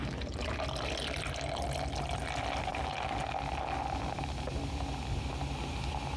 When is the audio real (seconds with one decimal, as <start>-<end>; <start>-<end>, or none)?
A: 0.0-6.2